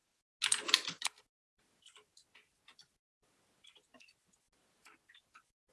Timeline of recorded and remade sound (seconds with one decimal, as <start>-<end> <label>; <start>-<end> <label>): 0.0-5.7 recorded